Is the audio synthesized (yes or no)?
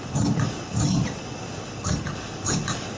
no